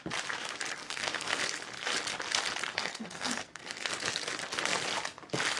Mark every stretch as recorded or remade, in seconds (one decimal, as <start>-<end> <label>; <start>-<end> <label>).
0.0-0.8 recorded; 0.8-1.4 remade; 1.4-2.7 recorded; 2.7-3.9 remade; 3.9-5.6 recorded